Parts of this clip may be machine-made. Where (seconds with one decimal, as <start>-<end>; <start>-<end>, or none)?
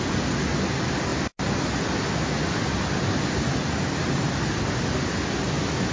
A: none